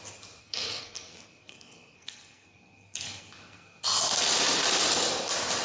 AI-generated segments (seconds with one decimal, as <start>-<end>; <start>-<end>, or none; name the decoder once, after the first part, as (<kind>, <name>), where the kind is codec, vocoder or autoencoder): 0.4-3.8 (codec, SNAC)